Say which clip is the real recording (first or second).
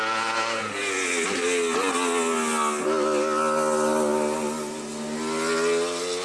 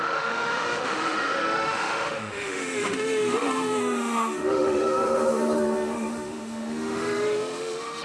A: first